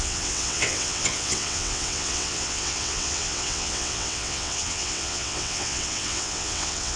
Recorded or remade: remade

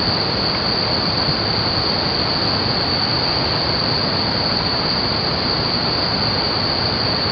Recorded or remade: recorded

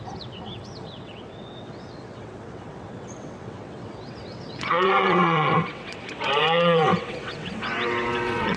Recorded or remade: remade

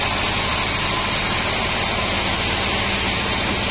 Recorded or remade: recorded